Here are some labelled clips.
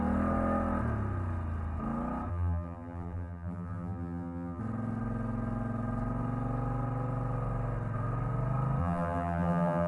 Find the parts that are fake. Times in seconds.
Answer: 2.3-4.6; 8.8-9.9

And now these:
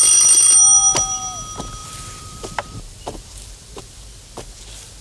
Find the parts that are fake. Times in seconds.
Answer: 1.8-3.8

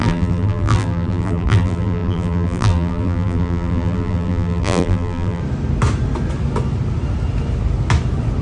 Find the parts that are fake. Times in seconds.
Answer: 0.0-5.4

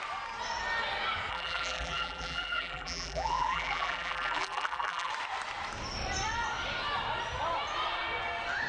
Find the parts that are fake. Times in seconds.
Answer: 1.3-5.1

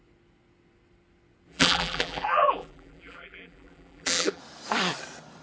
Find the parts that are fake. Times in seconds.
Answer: 1.5-4.4

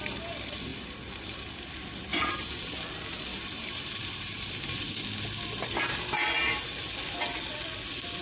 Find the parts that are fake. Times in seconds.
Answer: 2.1-2.8; 3.3-4.8